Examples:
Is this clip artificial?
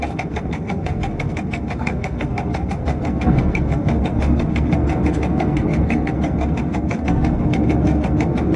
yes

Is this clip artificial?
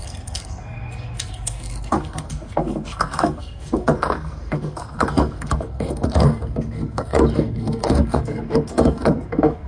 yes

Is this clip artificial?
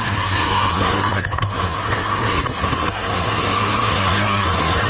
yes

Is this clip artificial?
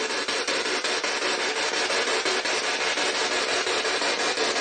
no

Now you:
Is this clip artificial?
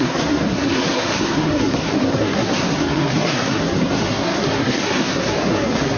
yes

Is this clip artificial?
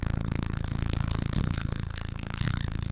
yes